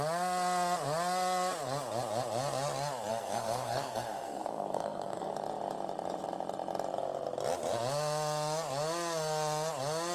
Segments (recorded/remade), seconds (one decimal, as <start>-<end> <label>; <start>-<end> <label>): 0.0-3.1 recorded; 3.1-5.3 remade; 5.3-10.1 recorded